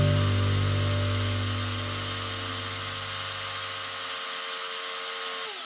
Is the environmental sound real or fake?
real